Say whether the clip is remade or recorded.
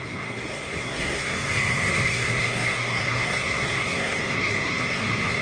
remade